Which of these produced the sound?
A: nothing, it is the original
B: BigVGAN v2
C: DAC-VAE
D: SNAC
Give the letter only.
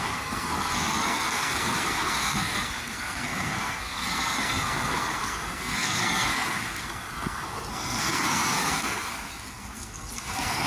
D